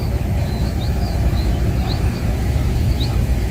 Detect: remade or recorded remade